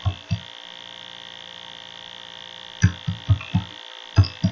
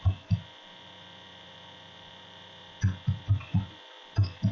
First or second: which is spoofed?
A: second